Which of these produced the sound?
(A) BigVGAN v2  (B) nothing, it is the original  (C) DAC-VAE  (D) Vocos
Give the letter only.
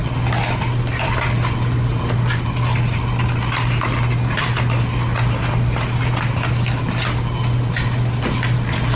B